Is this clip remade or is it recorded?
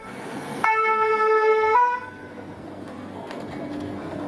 remade